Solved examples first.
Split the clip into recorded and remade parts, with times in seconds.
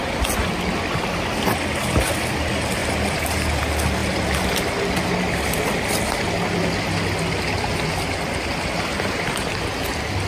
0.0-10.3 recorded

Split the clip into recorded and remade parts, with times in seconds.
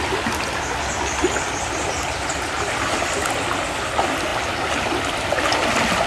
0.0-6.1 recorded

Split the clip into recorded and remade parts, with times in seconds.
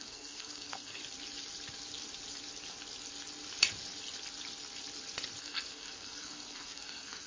0.0-1.0 remade; 1.0-5.4 recorded; 5.4-7.3 remade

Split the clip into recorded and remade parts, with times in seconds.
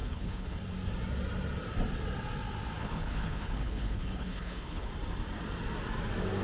0.0-0.6 remade; 0.6-2.8 recorded; 2.8-4.9 remade; 4.9-6.4 recorded